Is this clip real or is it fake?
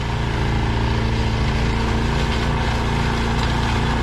real